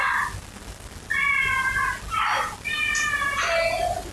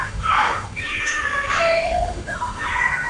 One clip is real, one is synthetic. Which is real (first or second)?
first